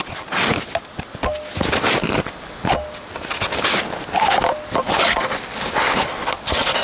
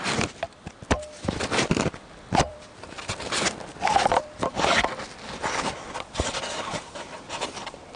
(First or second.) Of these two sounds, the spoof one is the second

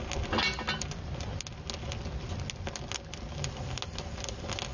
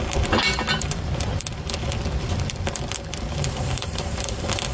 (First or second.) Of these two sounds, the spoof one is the second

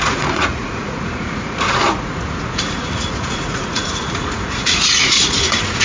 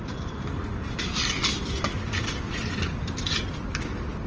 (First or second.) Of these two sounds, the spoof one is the first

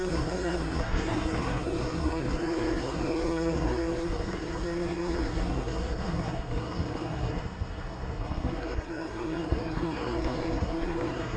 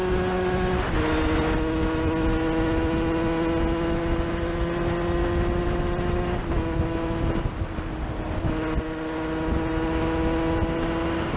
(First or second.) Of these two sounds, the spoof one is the first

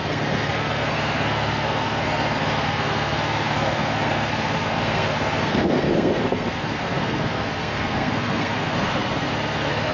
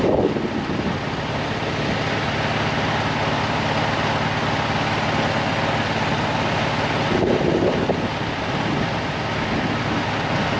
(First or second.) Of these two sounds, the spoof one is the first